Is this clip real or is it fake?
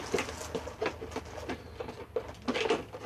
real